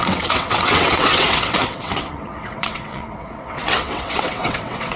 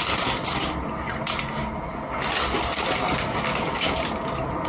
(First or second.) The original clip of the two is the second